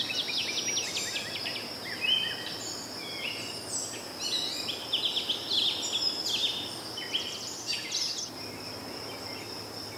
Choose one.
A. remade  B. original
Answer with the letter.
B